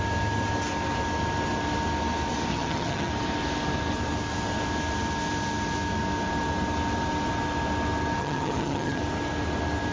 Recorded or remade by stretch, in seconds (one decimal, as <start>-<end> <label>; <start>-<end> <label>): 0.0-2.5 recorded; 2.5-3.1 remade; 3.1-8.2 recorded; 8.2-9.0 remade; 9.0-9.9 recorded